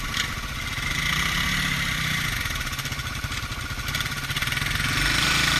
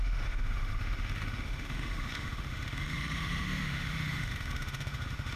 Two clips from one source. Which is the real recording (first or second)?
first